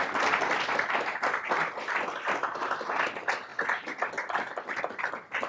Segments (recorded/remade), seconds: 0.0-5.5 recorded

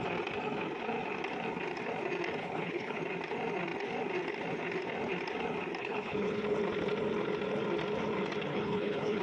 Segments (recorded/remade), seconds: 0.0-2.4 recorded; 2.4-3.0 remade; 3.0-5.8 recorded; 5.8-6.4 remade; 6.4-8.5 recorded; 8.5-9.2 remade

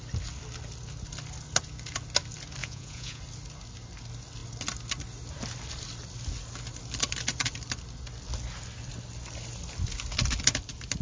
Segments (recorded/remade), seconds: 0.0-2.6 recorded; 2.6-3.2 remade; 3.2-11.0 recorded

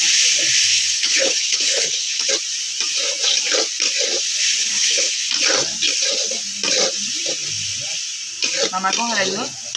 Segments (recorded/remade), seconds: 0.0-0.7 recorded; 0.7-2.3 remade; 2.3-4.6 recorded; 4.6-5.2 remade; 5.2-9.8 recorded

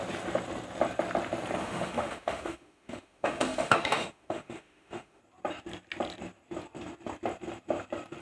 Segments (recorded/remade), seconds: 0.0-1.6 recorded; 1.6-5.2 remade; 5.2-8.2 recorded

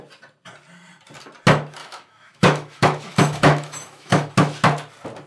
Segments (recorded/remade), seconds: 0.0-1.8 recorded; 1.8-4.3 remade; 4.3-5.3 recorded